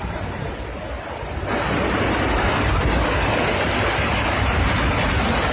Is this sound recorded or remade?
recorded